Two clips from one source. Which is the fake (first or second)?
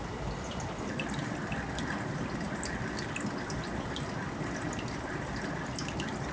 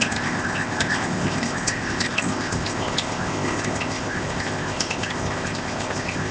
second